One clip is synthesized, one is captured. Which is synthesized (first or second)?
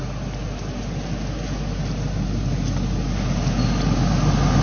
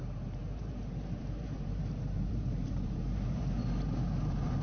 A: second